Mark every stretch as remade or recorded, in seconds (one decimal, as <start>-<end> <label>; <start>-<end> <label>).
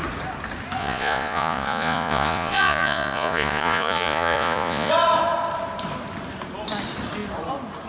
0.0-0.8 recorded; 0.8-4.9 remade; 4.9-7.9 recorded